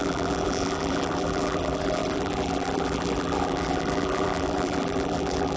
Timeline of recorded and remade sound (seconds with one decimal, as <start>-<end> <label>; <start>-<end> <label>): 0.0-5.6 remade